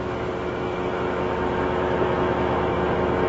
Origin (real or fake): fake